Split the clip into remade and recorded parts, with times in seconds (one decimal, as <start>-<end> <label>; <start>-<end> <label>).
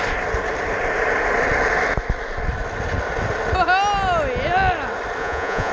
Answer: 0.0-5.2 recorded; 5.2-5.7 remade